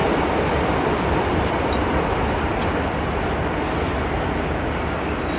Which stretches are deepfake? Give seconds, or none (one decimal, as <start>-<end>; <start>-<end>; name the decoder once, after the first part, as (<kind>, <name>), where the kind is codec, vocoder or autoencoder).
0.0-1.5 (vocoder, BigVGAN v2)

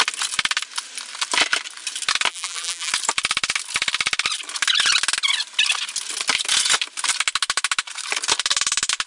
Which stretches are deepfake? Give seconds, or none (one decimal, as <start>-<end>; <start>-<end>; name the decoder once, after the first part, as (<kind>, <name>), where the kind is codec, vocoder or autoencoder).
2.3-2.9 (vocoder, BigVGAN v2)

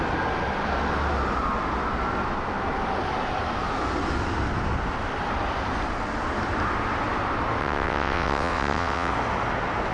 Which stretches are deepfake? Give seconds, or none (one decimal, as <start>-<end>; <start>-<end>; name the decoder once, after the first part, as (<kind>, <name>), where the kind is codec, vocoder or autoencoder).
7.6-9.1 (vocoder, WaveNeXt)